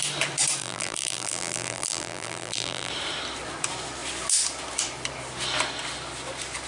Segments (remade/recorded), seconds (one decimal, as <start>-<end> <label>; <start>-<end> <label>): 0.0-0.6 recorded; 0.6-2.9 remade; 2.9-6.7 recorded